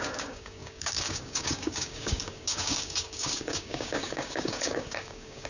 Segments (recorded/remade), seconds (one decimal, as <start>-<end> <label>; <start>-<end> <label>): 0.0-5.5 remade

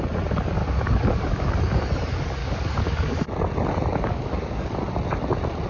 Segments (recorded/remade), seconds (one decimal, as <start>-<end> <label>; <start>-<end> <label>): 0.0-0.6 recorded; 0.6-1.6 remade; 1.6-2.4 recorded; 2.4-3.2 remade; 3.2-3.9 recorded; 3.9-4.8 remade; 4.8-5.7 recorded

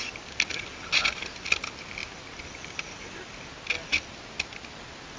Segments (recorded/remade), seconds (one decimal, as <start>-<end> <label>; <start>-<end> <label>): 0.0-5.2 recorded

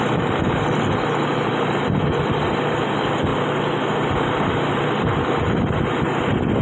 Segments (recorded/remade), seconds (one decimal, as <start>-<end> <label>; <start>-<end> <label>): 0.0-6.6 recorded

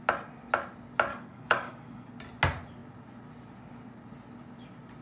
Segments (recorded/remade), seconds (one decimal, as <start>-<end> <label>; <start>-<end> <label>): 0.0-1.1 recorded; 1.1-2.1 remade; 2.1-5.0 recorded

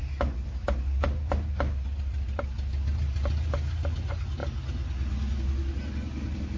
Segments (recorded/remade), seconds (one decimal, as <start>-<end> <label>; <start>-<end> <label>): 0.0-6.6 recorded

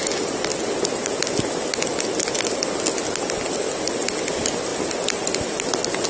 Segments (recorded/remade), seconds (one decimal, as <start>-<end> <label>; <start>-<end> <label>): 0.0-6.1 recorded

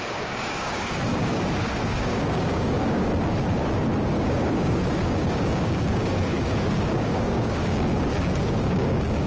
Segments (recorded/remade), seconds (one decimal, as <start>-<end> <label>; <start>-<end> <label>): 0.0-3.1 remade; 3.1-4.0 recorded; 4.0-9.3 remade